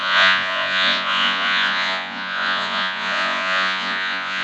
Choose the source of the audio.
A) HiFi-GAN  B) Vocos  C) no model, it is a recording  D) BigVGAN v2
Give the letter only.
B